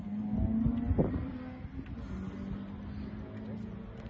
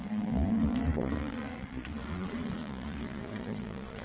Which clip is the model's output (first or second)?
second